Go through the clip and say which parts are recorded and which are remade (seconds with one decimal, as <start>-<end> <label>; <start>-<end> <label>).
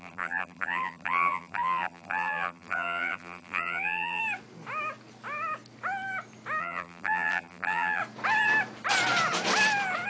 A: 0.0-4.2 remade; 4.2-6.6 recorded; 6.6-8.0 remade; 8.0-10.1 recorded